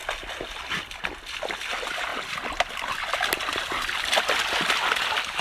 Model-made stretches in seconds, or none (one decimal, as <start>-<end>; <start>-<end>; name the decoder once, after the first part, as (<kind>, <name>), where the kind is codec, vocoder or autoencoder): none